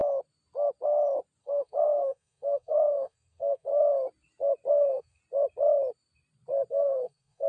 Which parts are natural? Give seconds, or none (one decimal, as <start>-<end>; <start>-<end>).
0.0-1.4; 3.7-4.7; 5.2-6.7